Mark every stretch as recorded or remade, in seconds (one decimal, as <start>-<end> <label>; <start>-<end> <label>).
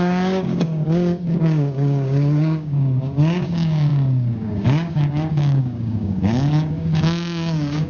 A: 0.0-7.9 remade